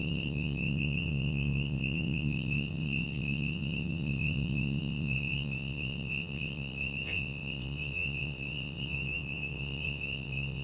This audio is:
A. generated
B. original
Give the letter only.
A